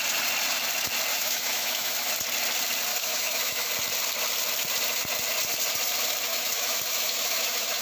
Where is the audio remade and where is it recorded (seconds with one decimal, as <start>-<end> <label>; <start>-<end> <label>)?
0.0-1.1 recorded; 1.1-2.1 remade; 2.1-2.9 recorded; 2.9-3.7 remade; 3.7-6.3 recorded; 6.3-7.8 remade